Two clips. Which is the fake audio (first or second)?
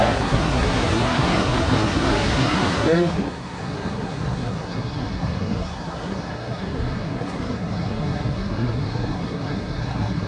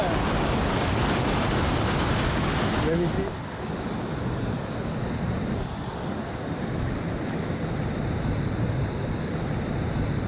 first